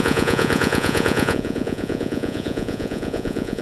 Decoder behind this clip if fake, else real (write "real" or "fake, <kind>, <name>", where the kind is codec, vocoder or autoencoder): fake, vocoder, Vocos